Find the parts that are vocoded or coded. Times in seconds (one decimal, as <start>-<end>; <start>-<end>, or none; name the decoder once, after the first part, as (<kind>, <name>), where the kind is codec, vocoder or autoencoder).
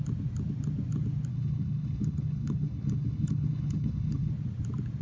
1.3-4.3 (codec, HILCodec)